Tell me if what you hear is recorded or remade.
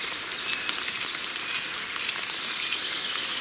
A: recorded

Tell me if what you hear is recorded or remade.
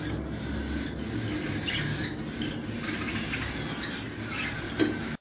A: recorded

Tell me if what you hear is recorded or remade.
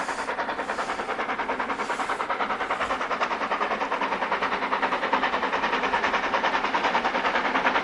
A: recorded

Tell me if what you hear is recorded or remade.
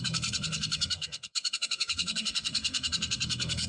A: remade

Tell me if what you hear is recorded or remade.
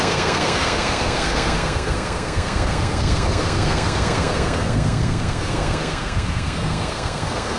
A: remade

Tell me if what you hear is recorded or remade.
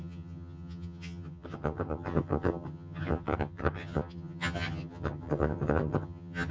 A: remade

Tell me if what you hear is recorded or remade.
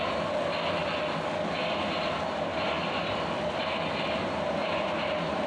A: recorded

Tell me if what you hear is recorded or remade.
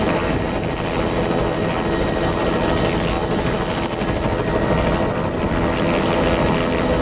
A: recorded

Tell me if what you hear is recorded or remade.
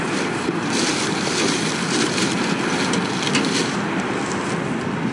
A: recorded